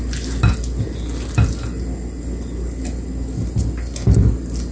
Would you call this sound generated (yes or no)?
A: no